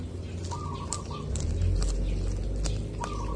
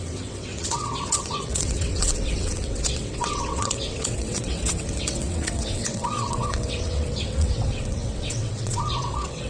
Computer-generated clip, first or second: second